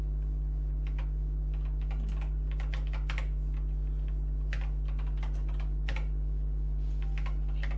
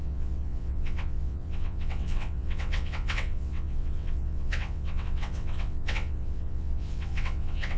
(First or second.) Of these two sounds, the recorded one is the first